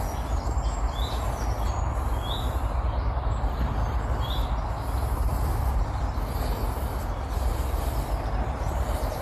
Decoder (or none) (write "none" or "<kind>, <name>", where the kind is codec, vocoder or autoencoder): none